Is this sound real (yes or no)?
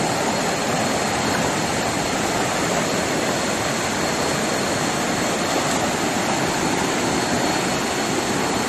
yes